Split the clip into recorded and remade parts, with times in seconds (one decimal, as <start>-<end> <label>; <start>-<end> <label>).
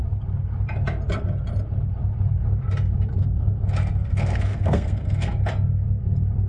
0.0-3.2 recorded; 3.2-5.4 remade; 5.4-6.5 recorded